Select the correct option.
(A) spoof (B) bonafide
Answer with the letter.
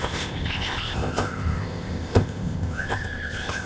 A